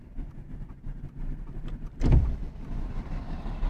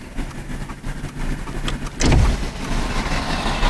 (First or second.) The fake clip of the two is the first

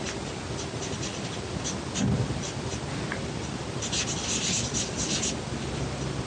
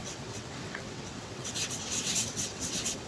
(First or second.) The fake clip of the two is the second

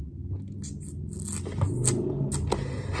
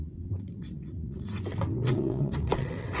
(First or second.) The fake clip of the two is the second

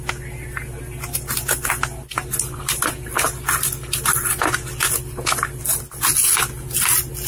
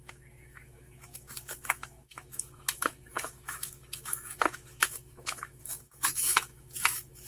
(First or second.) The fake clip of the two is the second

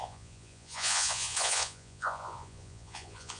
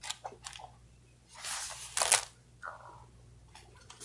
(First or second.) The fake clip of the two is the first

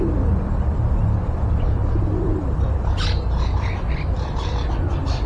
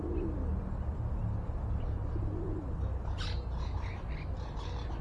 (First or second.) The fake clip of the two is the first